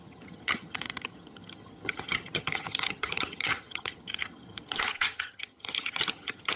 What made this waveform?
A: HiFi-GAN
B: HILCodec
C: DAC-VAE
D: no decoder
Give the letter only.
A